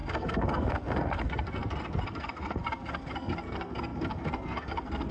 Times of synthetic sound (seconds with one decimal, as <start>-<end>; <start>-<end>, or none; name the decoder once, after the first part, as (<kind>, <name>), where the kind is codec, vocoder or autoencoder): 0.0-5.1 (codec, SNAC)